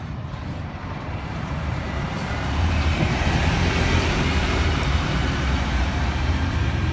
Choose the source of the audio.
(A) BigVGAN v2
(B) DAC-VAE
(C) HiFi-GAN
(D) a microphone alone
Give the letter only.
A